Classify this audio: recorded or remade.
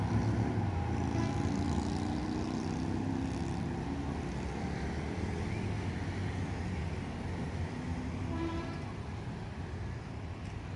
recorded